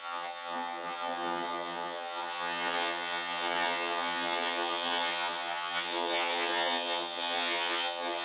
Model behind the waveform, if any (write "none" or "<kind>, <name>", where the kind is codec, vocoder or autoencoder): vocoder, HiFi-GAN